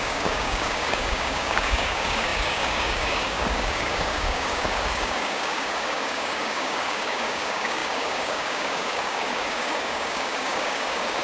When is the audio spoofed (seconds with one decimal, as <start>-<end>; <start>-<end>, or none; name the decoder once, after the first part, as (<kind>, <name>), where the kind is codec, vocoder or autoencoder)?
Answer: 0.0-11.2 (codec, DAC)